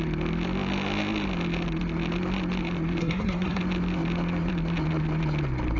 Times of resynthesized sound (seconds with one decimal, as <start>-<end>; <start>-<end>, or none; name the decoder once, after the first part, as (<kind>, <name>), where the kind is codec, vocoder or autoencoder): 3.0-3.6 (codec, SNAC)